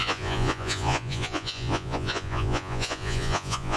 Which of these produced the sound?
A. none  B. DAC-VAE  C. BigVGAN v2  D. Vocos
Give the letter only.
D